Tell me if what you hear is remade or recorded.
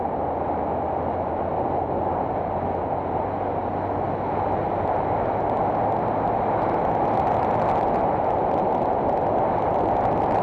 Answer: recorded